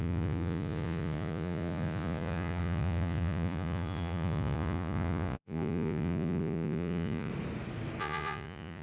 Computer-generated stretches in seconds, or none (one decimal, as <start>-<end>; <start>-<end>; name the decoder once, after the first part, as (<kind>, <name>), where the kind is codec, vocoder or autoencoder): 0.0-7.3 (vocoder, Vocos); 8.0-8.8